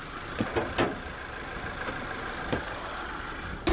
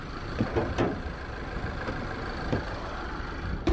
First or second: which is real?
first